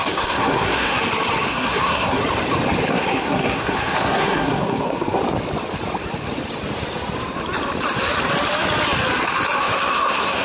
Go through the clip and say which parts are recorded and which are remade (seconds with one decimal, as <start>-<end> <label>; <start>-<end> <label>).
0.0-1.0 remade; 1.0-1.5 recorded; 1.5-2.2 remade; 2.2-2.9 recorded; 2.9-5.2 remade; 5.2-9.6 recorded; 9.6-10.4 remade